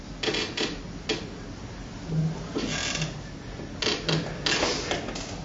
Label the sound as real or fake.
real